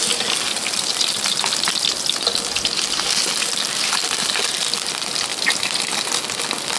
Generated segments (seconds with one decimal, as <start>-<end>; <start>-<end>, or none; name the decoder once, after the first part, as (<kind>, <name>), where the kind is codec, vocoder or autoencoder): 5.3-6.2 (vocoder, BigVGAN v2)

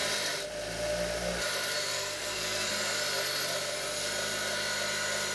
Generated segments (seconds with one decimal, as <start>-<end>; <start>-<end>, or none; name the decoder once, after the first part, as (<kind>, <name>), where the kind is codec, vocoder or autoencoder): 1.9-2.7 (codec, SNAC)

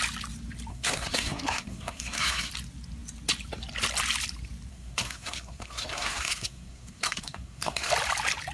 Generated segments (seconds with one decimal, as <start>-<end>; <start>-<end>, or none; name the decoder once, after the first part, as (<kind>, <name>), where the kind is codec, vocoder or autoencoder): 0.7-2.5 (codec, SNAC); 4.7-7.9

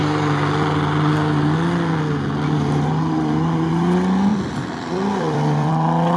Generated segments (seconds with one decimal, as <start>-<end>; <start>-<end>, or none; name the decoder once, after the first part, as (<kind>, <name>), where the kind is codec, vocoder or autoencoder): 4.3-5.7 (vocoder, BigVGAN v2)

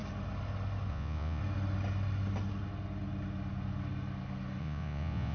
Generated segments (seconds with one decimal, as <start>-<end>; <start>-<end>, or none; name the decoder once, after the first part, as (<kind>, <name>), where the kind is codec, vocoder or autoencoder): 0.9-1.4 (vocoder, Vocos); 4.6-5.3